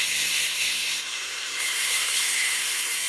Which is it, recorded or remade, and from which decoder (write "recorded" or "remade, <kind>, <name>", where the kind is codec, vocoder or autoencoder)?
remade, codec, SNAC